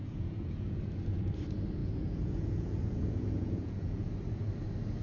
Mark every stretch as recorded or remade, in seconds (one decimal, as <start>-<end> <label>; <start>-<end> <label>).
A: 0.0-0.8 remade; 0.8-1.8 recorded; 1.8-4.1 remade; 4.1-5.0 recorded